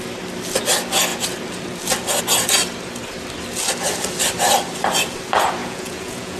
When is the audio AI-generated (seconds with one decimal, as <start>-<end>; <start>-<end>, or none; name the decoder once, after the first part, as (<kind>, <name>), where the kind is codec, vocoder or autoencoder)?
5.6-6.4 (vocoder, Vocos)

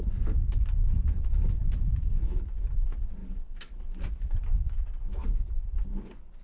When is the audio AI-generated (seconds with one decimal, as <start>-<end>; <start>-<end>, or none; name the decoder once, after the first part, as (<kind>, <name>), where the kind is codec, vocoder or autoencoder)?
none

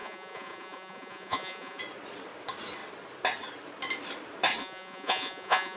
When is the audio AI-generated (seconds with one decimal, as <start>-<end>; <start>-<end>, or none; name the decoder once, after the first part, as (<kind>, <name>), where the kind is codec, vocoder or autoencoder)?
0.0-1.8 (vocoder, Vocos); 4.6-5.8

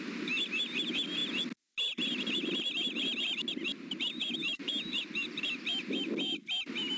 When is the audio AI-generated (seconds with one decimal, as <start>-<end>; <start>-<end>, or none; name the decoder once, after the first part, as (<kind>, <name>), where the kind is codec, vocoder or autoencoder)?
none

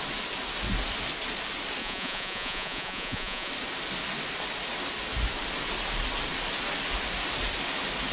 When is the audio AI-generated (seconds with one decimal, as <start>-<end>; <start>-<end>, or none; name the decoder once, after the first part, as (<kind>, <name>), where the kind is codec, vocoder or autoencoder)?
1.8-3.5 (vocoder, Vocos)

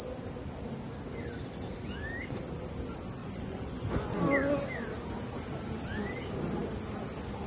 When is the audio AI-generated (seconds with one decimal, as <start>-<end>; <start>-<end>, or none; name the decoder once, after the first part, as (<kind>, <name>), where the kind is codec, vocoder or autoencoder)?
3.2-4.2 (vocoder, Vocos)

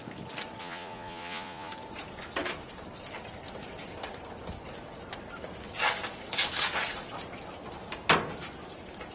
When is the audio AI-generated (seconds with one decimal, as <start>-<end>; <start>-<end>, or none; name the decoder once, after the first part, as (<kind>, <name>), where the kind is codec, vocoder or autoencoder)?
0.6-1.7 (vocoder, Vocos)